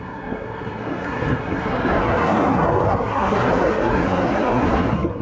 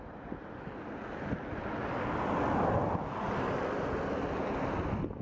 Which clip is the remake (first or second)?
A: first